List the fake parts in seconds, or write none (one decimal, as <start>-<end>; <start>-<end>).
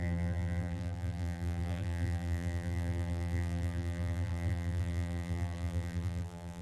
0.0-6.6